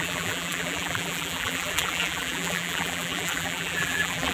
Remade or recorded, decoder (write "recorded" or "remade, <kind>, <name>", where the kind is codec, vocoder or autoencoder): remade, vocoder, BigVGAN v2